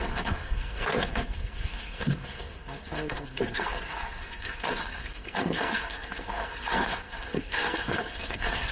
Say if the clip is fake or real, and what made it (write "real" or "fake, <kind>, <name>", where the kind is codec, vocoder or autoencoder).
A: fake, codec, SNAC